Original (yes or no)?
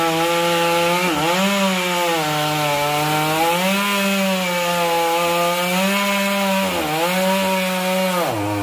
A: yes